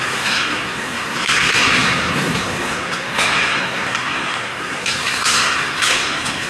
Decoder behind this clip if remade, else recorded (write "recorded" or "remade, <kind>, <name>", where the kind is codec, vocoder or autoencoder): remade, codec, SNAC